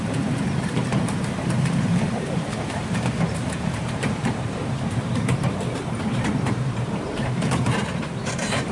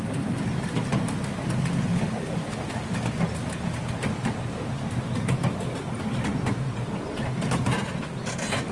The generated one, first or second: first